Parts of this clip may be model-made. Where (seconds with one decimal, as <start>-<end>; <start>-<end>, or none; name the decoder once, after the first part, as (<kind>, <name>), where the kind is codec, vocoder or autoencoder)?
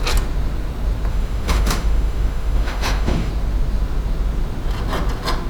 1.1-3.3 (autoencoder, DAC-VAE)